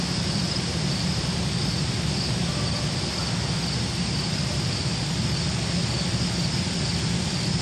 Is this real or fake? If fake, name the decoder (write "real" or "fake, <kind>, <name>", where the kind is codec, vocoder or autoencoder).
real